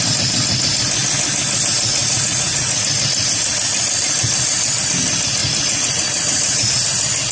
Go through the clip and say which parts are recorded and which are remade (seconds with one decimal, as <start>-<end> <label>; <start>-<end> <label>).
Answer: 0.0-2.0 recorded; 2.0-2.8 remade; 2.8-5.4 recorded; 5.4-6.7 remade; 6.7-7.3 recorded